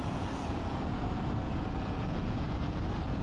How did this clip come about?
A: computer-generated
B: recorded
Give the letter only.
A